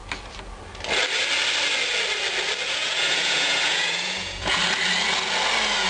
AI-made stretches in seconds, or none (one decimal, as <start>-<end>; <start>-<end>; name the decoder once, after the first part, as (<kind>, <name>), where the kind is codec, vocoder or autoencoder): 2.7-4.6 (vocoder, Vocos)